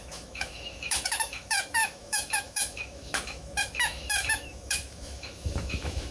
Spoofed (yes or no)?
yes